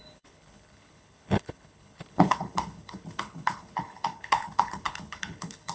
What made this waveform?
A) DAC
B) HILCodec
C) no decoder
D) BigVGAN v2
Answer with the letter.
B